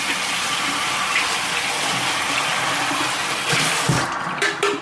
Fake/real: real